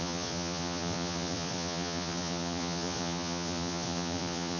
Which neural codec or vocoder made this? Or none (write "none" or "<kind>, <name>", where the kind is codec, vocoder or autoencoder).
vocoder, Vocos